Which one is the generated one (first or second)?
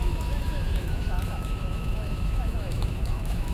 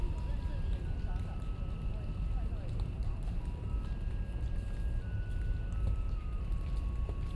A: first